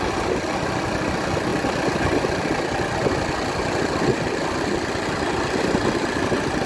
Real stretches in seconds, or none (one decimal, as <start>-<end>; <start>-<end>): 0.0-6.7